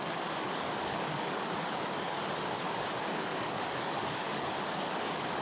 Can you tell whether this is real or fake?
fake